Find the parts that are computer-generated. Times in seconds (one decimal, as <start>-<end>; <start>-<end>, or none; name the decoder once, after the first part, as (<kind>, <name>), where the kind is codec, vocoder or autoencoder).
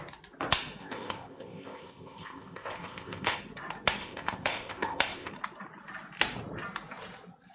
0.8-3.4 (codec, ZipCodec); 4.0-5.3